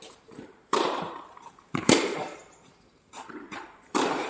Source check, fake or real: fake